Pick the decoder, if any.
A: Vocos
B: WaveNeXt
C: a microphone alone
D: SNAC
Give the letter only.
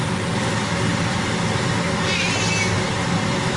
C